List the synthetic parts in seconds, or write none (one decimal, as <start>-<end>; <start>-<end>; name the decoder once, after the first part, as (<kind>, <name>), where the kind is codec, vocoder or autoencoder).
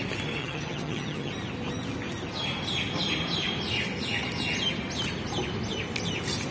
0.4-1.3 (vocoder, HiFi-GAN)